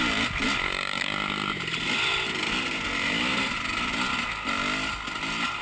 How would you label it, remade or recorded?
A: recorded